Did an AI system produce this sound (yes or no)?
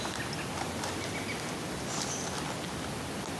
no